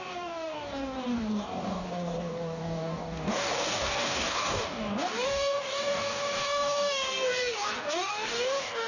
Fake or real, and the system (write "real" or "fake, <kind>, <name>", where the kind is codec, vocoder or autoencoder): fake, codec, DAC